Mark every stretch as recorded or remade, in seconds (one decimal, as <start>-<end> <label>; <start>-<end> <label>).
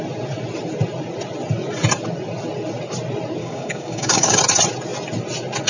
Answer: 0.0-3.4 recorded; 3.4-4.4 remade; 4.4-5.7 recorded